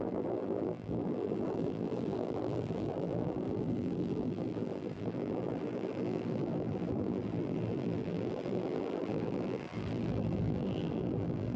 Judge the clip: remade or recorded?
remade